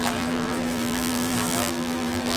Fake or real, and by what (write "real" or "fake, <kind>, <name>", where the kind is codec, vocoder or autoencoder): fake, vocoder, BigVGAN v2